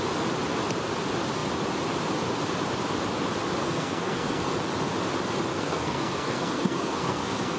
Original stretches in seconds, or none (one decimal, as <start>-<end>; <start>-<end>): 0.0-3.6; 4.5-5.5

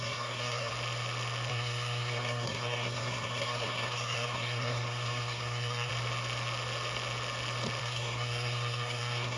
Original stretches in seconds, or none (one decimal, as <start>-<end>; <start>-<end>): 0.7-1.5; 5.9-7.8

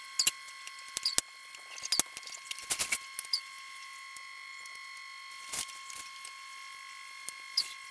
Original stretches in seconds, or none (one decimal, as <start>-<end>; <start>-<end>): 0.0-7.9

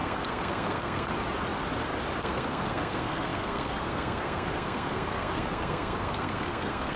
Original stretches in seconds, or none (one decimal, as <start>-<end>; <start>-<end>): 1.1-2.2

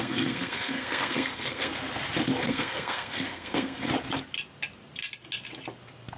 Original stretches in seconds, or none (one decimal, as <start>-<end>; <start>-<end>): 1.7-2.4; 3.9-6.2

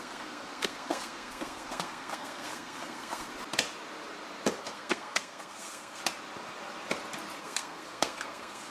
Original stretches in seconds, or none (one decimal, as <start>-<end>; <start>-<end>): 3.3-4.6; 6.0-7.4

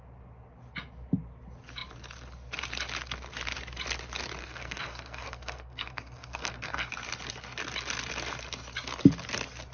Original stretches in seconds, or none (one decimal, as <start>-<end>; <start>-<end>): 0.0-4.4; 6.9-9.7